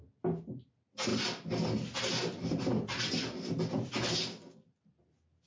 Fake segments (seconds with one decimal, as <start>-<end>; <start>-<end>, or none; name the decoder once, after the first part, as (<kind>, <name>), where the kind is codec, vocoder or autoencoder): none